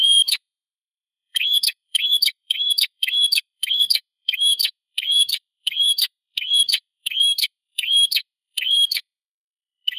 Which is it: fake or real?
fake